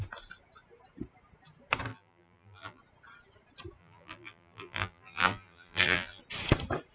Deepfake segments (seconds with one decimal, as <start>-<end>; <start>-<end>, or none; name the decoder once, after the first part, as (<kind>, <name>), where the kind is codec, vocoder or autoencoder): 1.9-2.8 (vocoder, BigVGAN v2); 3.8-6.2